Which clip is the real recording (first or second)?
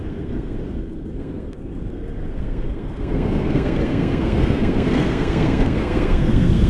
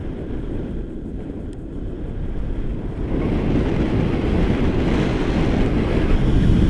second